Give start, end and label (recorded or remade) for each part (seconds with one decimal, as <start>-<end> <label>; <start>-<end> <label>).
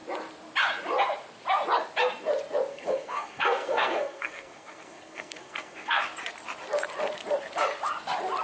0.0-2.7 recorded; 2.7-6.0 remade; 6.0-8.4 recorded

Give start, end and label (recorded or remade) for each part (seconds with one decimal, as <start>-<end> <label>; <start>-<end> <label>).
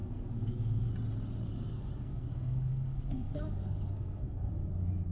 0.0-0.9 remade; 0.9-1.4 recorded; 1.4-4.5 remade; 4.5-5.1 recorded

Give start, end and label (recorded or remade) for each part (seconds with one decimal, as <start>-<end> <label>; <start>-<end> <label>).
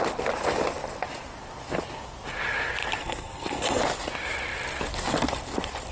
0.0-3.0 recorded; 3.0-3.8 remade; 3.8-5.9 recorded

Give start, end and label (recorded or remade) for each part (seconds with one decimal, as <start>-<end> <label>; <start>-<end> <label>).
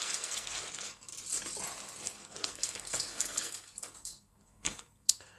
0.0-1.1 remade; 1.1-2.0 recorded; 2.0-5.4 remade